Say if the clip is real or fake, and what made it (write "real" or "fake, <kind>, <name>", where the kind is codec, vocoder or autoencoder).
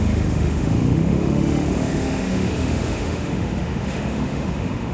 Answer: fake, autoencoder, DAC-VAE